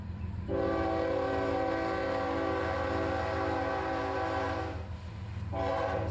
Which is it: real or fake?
real